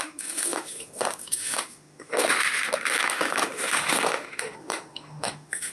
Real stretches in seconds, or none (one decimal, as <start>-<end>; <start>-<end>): none